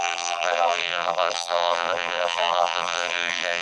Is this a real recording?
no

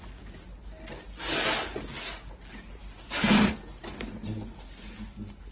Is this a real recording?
yes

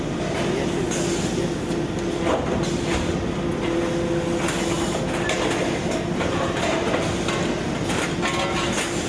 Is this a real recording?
yes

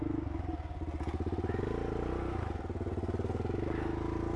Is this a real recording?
yes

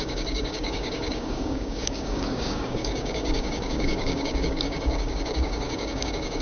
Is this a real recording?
no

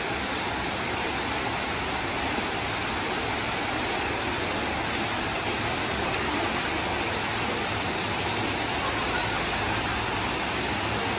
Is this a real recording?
yes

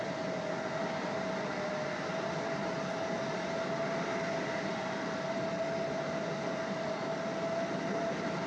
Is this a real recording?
no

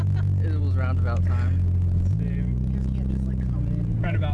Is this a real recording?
yes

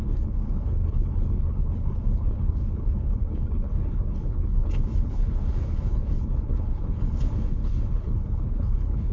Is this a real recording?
no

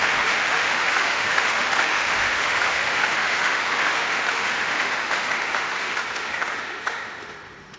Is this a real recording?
no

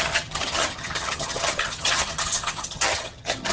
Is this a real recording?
no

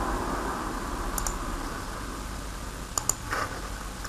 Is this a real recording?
yes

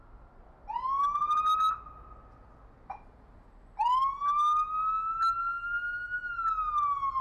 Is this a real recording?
yes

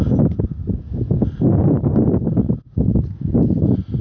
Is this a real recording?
yes